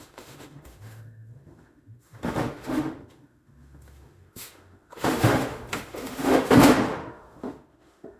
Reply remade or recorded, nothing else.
remade